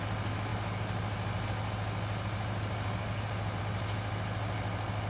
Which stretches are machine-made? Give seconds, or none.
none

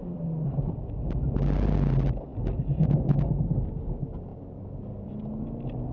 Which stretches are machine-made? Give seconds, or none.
0.0-1.1 (vocoder, BigVGAN v2); 4.3-5.1

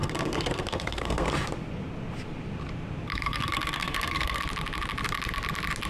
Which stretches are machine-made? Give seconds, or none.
0.0-1.3 (codec, SNAC); 3.1-4.4

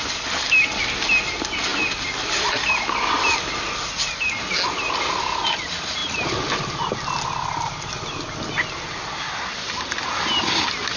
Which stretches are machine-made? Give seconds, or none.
none